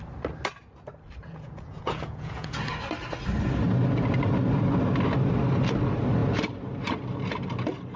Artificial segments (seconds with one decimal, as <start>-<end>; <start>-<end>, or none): 1.2-2.6